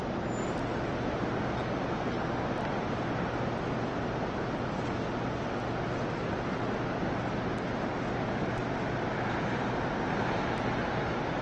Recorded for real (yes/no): yes